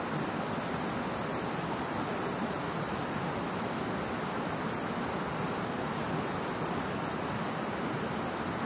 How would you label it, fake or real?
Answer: real